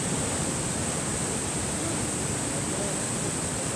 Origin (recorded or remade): recorded